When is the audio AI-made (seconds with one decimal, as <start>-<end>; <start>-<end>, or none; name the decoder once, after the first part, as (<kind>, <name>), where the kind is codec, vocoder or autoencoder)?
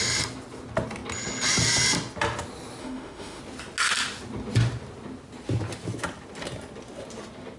2.8-3.4 (autoencoder, DAC-VAE)